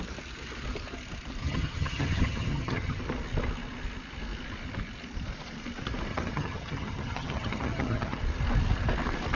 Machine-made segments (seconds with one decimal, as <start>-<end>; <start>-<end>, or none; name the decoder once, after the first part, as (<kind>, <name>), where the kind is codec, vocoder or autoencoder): 1.4-3.0 (vocoder, HiFi-GAN); 6.1-8.2